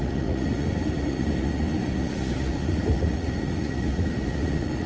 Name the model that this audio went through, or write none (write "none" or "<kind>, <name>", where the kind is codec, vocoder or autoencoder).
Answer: vocoder, Vocos